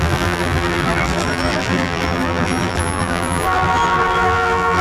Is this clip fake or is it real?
fake